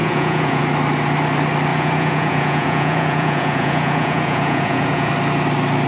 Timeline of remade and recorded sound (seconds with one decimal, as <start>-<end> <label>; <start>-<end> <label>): 0.0-0.6 remade; 0.6-1.7 recorded; 1.7-5.1 remade; 5.1-5.9 recorded